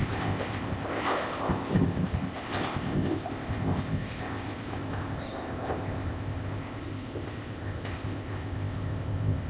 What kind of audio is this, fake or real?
fake